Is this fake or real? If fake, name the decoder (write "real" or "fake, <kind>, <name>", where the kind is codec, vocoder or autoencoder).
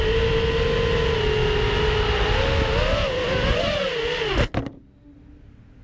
real